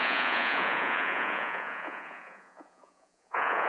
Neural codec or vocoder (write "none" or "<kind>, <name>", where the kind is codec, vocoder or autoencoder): vocoder, Vocos